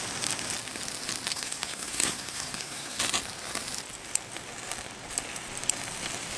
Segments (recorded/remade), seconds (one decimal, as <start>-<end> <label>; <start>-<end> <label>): 0.0-1.3 recorded; 1.3-3.0 remade; 3.0-6.4 recorded